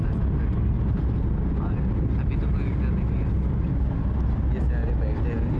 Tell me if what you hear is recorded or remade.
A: recorded